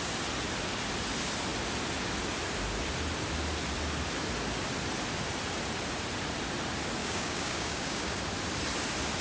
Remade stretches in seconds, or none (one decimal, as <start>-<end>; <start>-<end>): 7.0-8.2